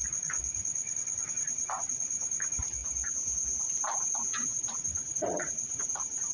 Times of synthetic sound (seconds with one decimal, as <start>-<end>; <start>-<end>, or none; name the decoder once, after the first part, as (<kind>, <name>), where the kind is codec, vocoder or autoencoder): 1.3-6.3 (vocoder, BigVGAN v2)